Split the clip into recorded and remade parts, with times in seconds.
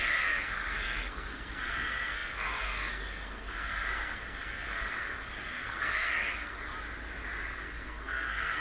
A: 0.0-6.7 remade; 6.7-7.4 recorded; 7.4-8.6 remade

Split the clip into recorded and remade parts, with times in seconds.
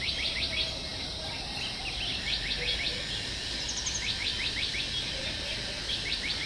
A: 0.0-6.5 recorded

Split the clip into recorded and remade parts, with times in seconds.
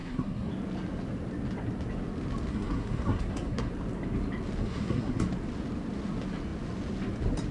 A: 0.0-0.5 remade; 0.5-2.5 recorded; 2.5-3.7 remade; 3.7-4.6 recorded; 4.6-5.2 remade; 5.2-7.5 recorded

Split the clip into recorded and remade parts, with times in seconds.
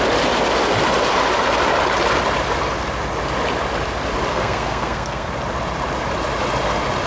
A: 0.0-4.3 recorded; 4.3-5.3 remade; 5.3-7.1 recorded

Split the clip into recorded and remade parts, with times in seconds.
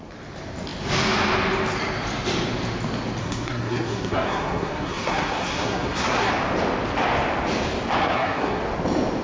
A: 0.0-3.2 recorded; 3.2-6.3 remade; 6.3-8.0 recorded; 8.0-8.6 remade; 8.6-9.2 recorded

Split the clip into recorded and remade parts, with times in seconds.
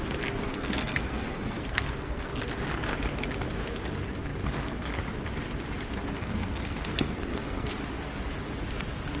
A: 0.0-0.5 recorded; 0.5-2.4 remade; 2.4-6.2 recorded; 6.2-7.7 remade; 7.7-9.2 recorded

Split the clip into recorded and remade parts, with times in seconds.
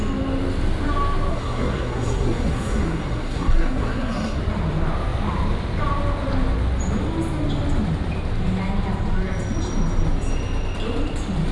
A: 0.0-1.3 recorded; 1.3-4.4 remade; 4.4-11.5 recorded